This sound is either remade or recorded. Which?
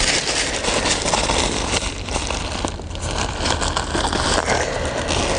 recorded